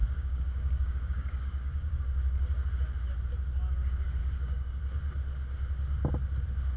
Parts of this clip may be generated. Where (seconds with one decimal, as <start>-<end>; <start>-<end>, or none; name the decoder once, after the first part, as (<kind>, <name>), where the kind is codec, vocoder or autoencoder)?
0.0-2.0 (codec, DAC); 4.2-4.8